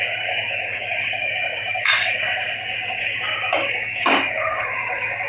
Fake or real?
fake